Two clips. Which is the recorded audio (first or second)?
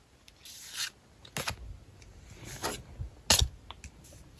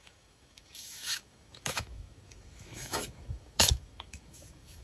first